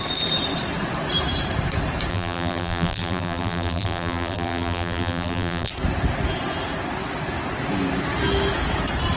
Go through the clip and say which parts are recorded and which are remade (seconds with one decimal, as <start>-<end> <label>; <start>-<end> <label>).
0.0-2.1 recorded; 2.1-5.7 remade; 5.7-9.2 recorded